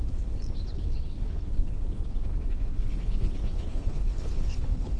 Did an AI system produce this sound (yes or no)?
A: yes